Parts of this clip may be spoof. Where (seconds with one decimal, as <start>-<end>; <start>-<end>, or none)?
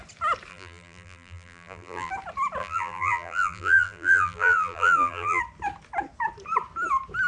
0.5-2.1; 2.6-5.4